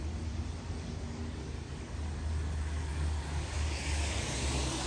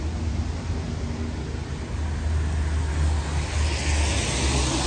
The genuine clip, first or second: second